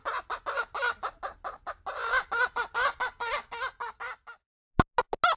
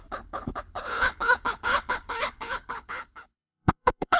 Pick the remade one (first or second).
second